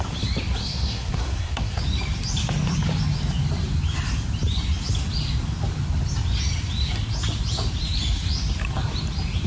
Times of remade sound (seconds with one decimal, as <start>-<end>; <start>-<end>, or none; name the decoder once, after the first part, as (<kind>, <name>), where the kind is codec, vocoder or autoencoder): 0.6-1.8 (codec, SNAC)